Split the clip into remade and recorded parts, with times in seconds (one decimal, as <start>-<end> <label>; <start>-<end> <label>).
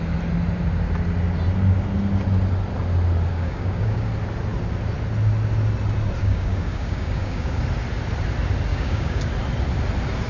0.0-3.3 recorded; 3.3-4.1 remade; 4.1-6.2 recorded; 6.2-7.6 remade; 7.6-8.7 recorded; 8.7-9.2 remade; 9.2-10.3 recorded